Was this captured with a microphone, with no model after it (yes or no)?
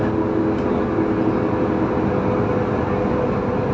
yes